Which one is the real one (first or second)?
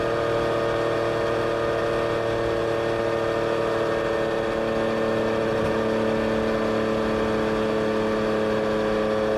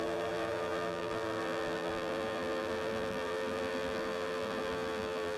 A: first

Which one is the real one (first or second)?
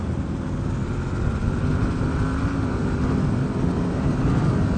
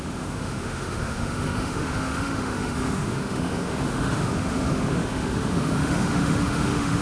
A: first